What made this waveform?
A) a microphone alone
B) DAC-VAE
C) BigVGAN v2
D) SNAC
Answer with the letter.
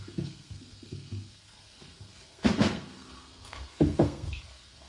D